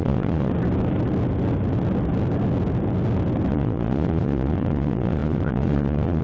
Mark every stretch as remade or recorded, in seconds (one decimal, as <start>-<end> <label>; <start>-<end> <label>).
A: 0.0-0.5 remade; 0.5-3.5 recorded; 3.5-6.2 remade